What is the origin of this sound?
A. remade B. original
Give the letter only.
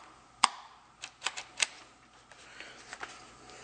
B